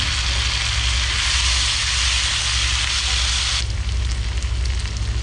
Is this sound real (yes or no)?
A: yes